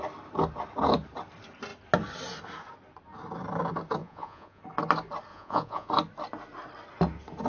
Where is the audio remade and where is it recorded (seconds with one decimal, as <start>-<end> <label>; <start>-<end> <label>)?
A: 0.0-4.0 recorded; 4.0-4.6 remade; 4.6-5.3 recorded; 5.3-5.9 remade; 5.9-7.5 recorded